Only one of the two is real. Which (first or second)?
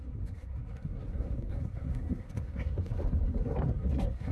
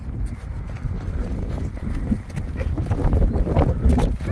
second